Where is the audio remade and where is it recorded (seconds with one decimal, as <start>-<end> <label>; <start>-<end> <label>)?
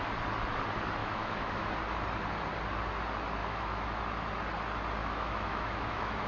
0.0-1.0 recorded; 1.0-1.7 remade; 1.7-3.4 recorded; 3.4-4.0 remade; 4.0-5.0 recorded; 5.0-6.3 remade